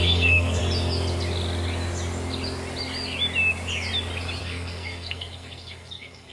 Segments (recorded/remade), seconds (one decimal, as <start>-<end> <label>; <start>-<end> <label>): 0.0-0.6 remade; 0.6-4.4 recorded; 4.4-6.3 remade